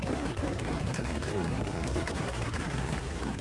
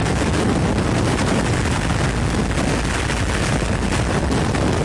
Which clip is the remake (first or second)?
first